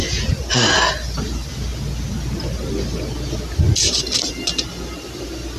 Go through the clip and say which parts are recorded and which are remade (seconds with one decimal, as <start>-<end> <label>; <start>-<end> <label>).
0.0-5.6 recorded